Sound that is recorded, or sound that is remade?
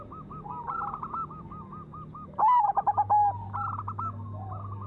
recorded